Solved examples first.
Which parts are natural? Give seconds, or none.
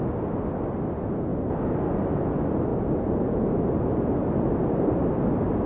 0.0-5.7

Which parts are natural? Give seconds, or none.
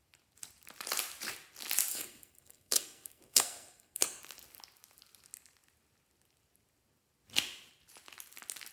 0.0-1.9; 4.2-8.7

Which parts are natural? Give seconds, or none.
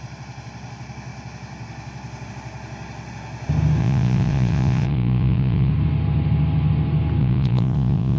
0.0-3.8; 5.7-7.2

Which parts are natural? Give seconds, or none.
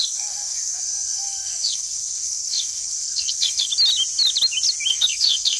3.7-4.9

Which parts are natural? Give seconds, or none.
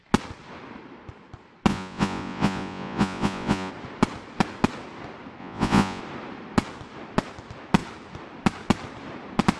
0.0-1.7; 3.7-5.4; 6.0-9.6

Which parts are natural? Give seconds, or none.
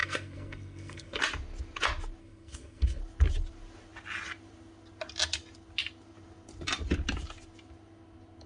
1.2-2.2; 3.0-8.5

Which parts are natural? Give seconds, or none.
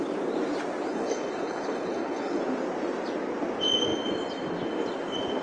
0.0-0.9; 2.4-5.4